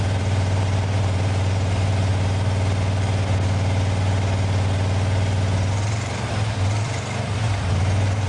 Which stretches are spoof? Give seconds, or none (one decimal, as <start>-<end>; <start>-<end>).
0.0-2.1; 5.7-8.3